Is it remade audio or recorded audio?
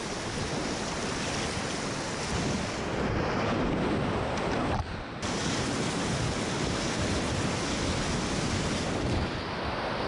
recorded